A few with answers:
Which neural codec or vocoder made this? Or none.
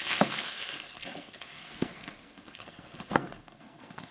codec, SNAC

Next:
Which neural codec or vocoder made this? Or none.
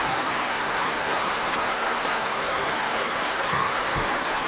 codec, SNAC